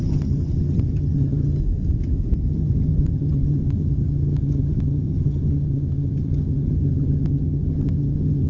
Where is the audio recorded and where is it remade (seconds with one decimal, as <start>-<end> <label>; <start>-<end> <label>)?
0.0-1.6 remade; 1.6-2.5 recorded; 2.5-8.5 remade